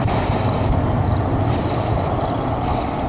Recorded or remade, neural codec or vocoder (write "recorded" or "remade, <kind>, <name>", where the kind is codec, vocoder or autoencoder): recorded